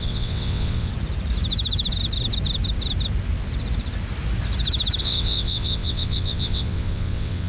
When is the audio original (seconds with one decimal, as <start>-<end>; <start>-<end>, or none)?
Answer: 0.9-5.0